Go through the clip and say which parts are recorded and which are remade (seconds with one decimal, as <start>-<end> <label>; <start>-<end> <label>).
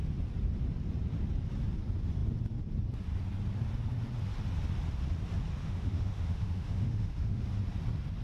0.0-5.6 recorded; 5.6-7.5 remade; 7.5-8.2 recorded